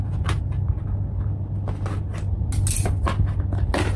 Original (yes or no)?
yes